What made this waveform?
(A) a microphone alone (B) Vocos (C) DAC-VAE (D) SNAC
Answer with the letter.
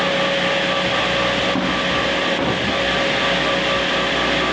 A